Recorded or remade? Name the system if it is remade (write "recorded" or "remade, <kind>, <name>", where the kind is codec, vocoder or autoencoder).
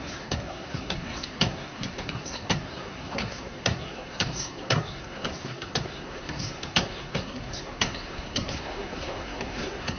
remade, codec, SNAC